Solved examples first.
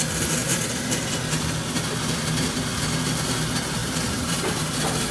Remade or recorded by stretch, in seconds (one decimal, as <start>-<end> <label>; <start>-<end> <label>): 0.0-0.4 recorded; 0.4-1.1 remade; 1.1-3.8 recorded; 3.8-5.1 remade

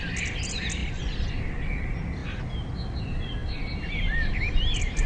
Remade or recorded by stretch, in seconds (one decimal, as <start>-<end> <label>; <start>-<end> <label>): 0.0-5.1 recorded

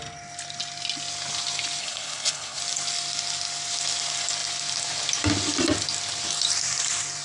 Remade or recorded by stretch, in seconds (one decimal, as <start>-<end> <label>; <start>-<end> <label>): 0.0-1.8 recorded; 1.8-2.6 remade; 2.6-7.2 recorded

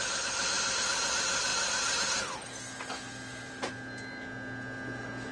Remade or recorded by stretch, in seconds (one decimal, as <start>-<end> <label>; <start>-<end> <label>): 0.0-5.3 recorded

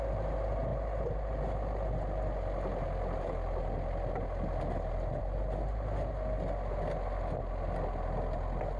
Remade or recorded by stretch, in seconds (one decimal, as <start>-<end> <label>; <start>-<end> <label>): 0.0-8.8 recorded